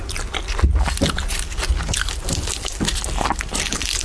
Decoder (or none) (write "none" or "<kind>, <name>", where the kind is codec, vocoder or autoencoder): none